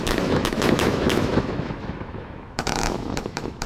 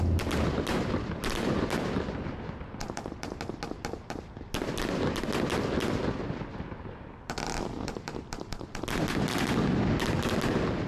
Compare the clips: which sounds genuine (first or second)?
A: second